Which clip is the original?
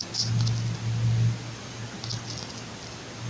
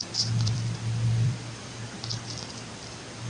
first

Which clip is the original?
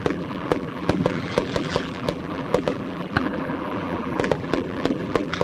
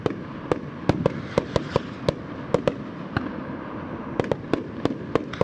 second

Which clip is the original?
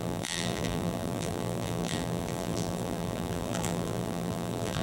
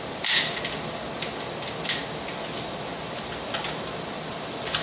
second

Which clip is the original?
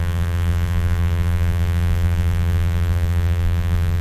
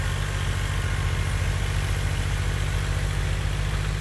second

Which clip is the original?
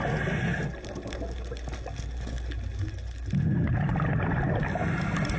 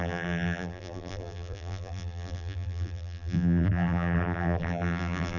first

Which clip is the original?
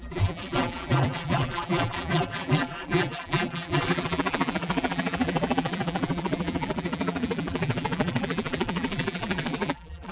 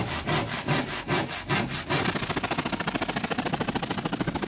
second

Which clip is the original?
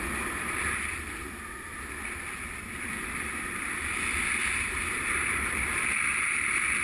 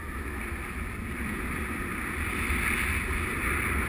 second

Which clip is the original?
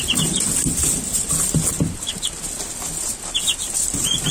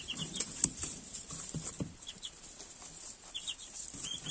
first